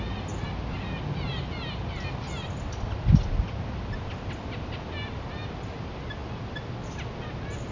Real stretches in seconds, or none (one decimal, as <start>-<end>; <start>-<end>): 0.0-7.7